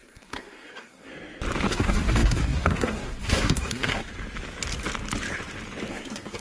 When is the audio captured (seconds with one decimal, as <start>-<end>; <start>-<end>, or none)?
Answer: 1.1-1.7; 4.1-5.9